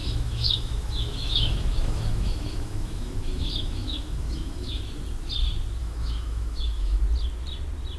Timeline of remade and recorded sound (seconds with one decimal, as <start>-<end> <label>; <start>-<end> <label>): 0.0-4.8 remade; 4.8-5.8 recorded; 5.8-7.0 remade; 7.0-8.0 recorded

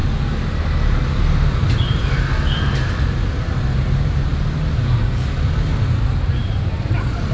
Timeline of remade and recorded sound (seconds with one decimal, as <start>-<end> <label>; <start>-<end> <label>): 0.0-1.1 recorded; 1.1-4.3 remade; 4.3-5.9 recorded; 5.9-7.3 remade

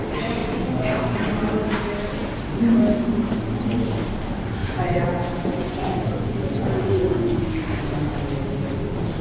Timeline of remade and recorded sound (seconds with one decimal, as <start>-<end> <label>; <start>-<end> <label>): 0.0-4.6 recorded; 4.6-7.4 remade; 7.4-9.2 recorded

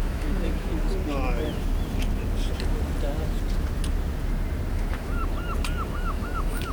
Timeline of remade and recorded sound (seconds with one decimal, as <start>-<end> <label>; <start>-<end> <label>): 0.0-0.7 remade; 0.7-4.7 recorded; 4.7-5.2 remade; 5.2-5.9 recorded; 5.9-6.7 remade

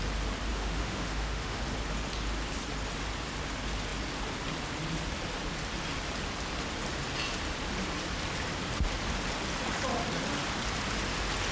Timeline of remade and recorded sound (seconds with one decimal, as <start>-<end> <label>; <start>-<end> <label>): 0.0-0.5 recorded; 0.5-1.6 remade; 1.6-11.5 recorded